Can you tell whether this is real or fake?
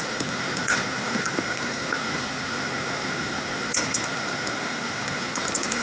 fake